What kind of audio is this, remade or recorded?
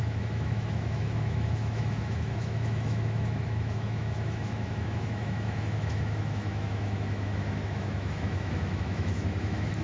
remade